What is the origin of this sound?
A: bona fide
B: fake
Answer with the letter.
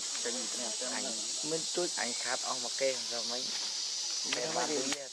A